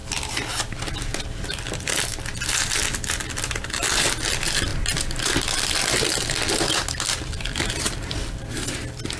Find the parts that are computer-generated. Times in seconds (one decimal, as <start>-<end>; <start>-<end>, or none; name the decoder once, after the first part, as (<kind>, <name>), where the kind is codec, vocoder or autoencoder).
none